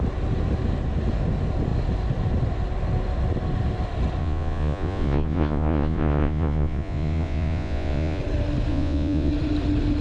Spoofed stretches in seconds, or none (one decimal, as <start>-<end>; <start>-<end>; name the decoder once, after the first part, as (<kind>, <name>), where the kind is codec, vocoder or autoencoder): 4.2-8.2 (vocoder, Vocos); 8.7-9.3